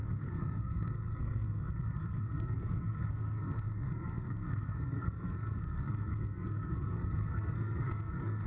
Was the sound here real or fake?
fake